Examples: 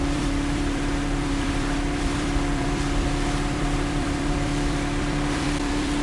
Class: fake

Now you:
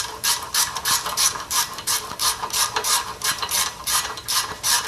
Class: fake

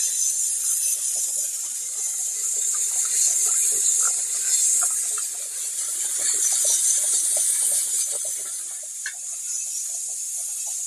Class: real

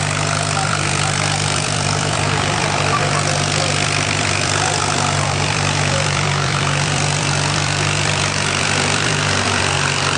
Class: fake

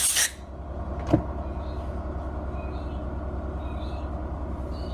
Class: real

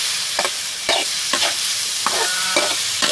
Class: fake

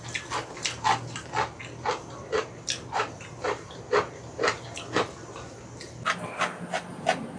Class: real